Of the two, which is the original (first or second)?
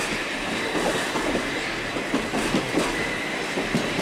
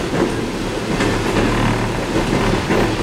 second